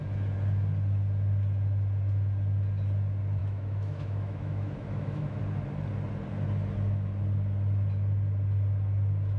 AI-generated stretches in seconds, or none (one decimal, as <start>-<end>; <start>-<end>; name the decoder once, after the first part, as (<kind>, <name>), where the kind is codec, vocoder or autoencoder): 3.4-5.4 (autoencoder, DAC-VAE)